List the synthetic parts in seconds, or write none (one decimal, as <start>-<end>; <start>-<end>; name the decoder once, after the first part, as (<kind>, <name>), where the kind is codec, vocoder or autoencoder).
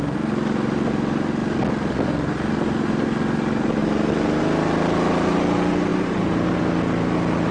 5.9-6.6 (vocoder, BigVGAN v2)